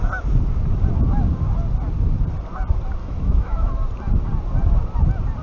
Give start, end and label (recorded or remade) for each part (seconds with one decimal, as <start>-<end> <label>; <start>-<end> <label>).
0.0-3.0 recorded; 3.0-3.7 remade; 3.7-5.4 recorded